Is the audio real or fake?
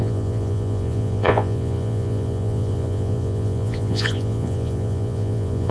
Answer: fake